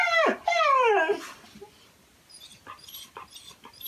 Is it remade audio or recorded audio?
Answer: recorded